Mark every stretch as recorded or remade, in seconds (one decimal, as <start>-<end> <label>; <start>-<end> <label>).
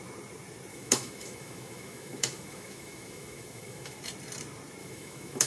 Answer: 0.0-0.7 recorded; 0.7-4.0 remade; 4.0-4.8 recorded; 4.8-5.5 remade